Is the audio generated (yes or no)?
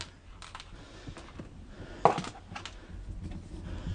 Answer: no